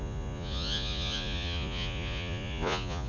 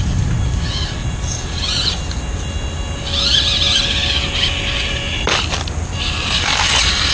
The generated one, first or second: first